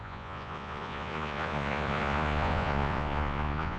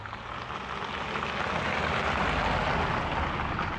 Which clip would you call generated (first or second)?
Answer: first